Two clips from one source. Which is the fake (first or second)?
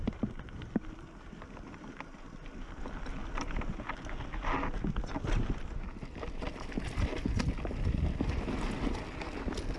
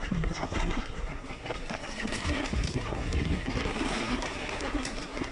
second